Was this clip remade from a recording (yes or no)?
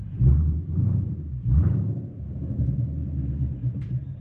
yes